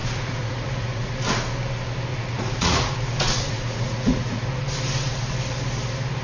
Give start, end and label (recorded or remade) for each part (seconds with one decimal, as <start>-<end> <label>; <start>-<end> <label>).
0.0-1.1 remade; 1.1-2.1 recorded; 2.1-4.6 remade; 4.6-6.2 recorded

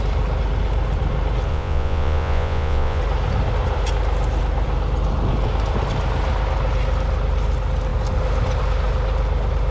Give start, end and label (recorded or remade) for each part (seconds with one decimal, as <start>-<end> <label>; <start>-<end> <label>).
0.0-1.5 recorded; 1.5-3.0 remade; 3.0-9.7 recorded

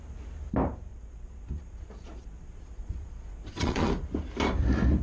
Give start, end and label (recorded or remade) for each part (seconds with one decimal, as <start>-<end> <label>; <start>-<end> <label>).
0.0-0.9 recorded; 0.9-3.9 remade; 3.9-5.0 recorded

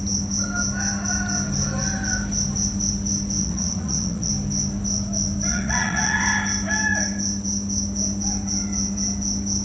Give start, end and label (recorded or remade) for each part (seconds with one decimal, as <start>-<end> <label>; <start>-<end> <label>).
0.0-3.4 recorded; 3.4-4.3 remade; 4.3-5.5 recorded; 5.5-6.2 remade; 6.2-9.6 recorded